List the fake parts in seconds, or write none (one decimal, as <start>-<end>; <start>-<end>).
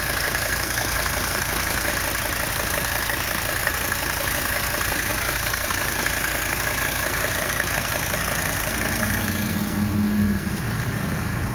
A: 0.0-1.9; 2.5-11.5